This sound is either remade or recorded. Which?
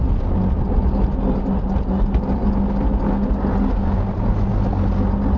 recorded